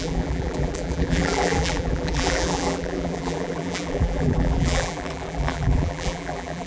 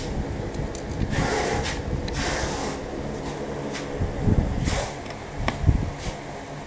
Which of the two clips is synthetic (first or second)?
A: first